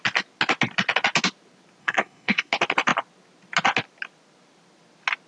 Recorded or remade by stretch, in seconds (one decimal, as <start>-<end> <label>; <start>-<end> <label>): 0.0-1.8 recorded; 1.8-2.5 remade; 2.5-5.3 recorded